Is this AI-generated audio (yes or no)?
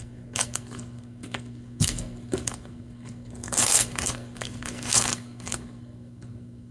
yes